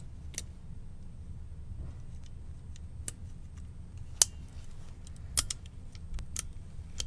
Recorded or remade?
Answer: recorded